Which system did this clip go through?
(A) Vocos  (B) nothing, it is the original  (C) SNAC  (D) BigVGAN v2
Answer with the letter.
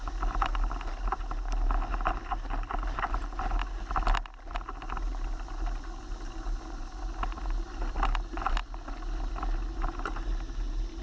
B